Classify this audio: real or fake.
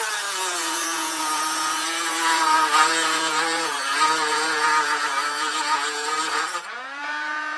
fake